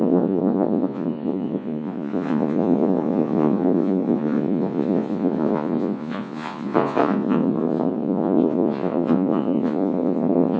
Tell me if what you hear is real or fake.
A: fake